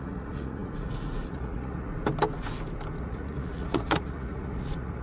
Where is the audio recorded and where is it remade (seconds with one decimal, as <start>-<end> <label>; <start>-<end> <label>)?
0.0-1.9 remade; 1.9-3.0 recorded; 3.0-5.0 remade